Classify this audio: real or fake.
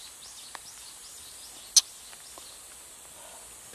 real